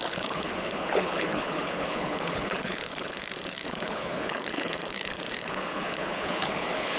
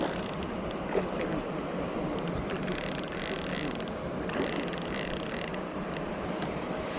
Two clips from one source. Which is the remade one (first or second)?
first